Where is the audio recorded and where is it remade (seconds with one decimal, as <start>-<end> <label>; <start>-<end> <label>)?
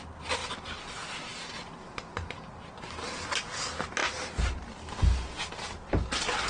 0.0-4.0 recorded; 4.0-5.9 remade; 5.9-6.5 recorded